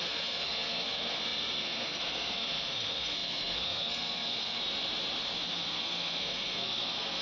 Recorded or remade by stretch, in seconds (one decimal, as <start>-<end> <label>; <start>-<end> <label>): 0.0-4.6 remade; 4.6-5.4 recorded; 5.4-7.2 remade